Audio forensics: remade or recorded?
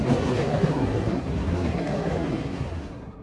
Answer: remade